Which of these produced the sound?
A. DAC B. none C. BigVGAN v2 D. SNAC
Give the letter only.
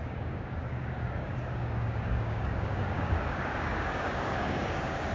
A